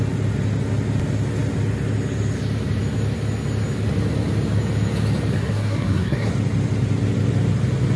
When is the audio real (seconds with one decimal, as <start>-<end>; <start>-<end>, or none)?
0.0-5.3; 6.3-8.0